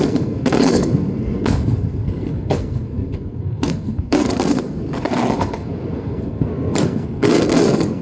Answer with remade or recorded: remade